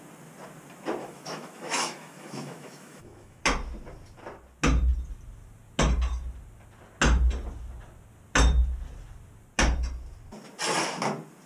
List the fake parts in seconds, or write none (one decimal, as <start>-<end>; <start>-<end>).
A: 1.0-3.4

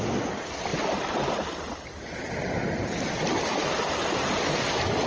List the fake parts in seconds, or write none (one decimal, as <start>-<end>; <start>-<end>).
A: none

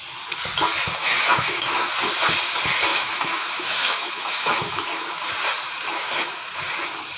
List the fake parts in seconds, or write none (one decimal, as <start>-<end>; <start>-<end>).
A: 1.0-1.9; 2.9-5.3; 5.9-6.6